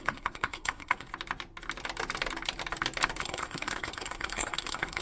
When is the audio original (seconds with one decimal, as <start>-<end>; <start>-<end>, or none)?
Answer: 1.1-3.2